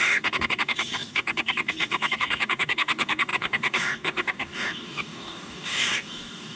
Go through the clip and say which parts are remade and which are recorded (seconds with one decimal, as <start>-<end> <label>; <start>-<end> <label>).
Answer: 0.0-6.6 remade